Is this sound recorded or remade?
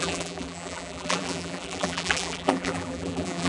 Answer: remade